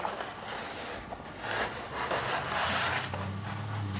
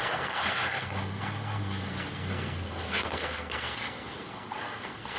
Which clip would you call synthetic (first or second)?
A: second